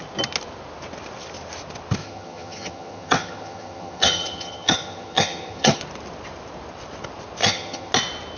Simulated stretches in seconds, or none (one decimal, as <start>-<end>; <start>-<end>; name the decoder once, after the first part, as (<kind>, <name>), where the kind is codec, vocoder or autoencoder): 2.0-5.8 (vocoder, HiFi-GAN); 7.4-7.9